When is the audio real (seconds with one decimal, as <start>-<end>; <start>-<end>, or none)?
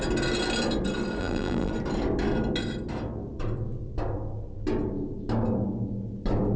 0.0-1.2; 1.7-6.6